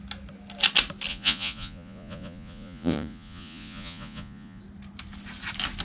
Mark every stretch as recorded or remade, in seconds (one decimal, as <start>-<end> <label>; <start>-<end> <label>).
0.0-1.1 recorded; 1.1-4.6 remade; 4.6-5.8 recorded